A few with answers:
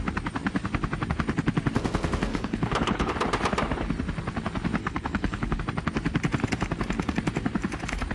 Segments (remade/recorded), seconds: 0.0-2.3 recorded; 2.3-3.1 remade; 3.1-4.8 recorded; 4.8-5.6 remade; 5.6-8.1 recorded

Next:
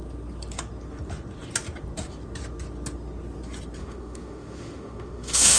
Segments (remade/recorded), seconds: 0.0-3.8 recorded; 3.8-5.6 remade

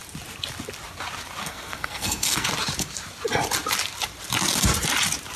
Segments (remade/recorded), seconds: 0.0-1.4 recorded; 1.4-2.5 remade; 2.5-5.4 recorded